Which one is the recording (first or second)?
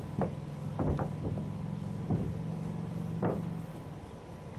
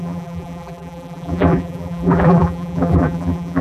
first